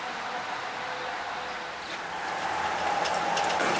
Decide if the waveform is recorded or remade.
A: recorded